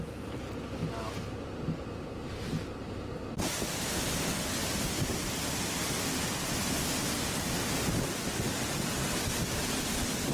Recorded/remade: recorded